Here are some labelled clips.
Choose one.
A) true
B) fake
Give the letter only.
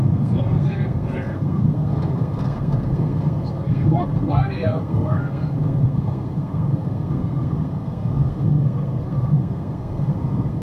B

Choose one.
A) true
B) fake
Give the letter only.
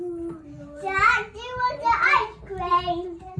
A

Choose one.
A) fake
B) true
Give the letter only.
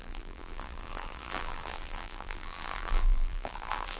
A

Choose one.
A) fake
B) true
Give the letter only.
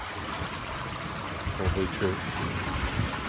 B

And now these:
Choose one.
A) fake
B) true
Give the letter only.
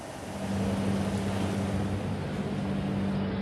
B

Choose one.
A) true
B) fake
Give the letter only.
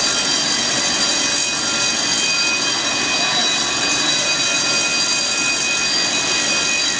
A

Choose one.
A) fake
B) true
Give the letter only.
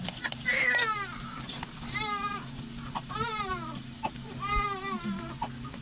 B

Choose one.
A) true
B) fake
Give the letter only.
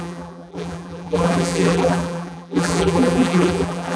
B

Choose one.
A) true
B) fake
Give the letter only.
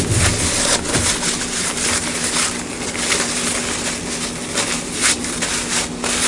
A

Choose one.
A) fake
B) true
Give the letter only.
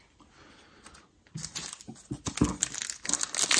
B